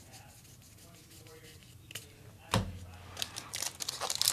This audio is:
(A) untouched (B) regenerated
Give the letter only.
A